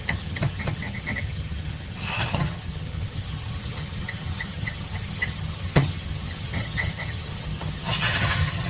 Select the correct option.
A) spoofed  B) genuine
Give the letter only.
A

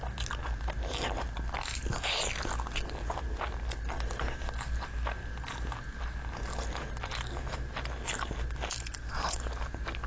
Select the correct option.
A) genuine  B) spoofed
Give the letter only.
A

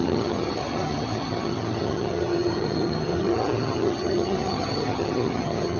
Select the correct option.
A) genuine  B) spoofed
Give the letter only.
B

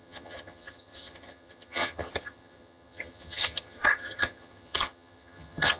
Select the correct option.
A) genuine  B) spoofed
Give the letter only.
B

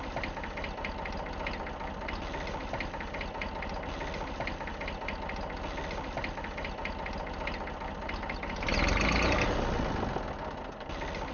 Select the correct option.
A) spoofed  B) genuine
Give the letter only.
B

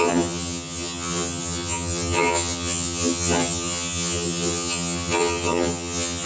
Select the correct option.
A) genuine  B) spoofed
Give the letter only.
B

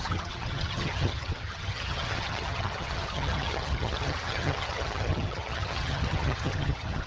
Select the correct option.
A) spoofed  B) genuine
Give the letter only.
A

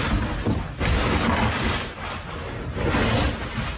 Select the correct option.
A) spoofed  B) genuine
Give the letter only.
B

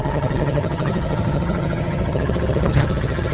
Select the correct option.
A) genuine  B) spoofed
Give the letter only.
B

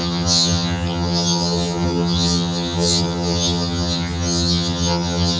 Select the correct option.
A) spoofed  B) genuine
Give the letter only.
A